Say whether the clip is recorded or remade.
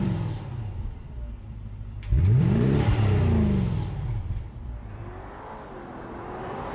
remade